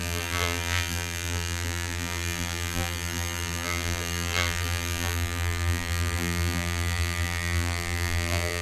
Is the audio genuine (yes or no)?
no